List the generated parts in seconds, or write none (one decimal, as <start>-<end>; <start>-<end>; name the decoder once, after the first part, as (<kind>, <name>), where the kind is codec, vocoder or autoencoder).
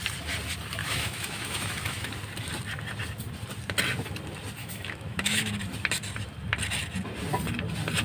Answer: 0.8-2.1 (autoencoder, DAC-VAE); 4.6-5.5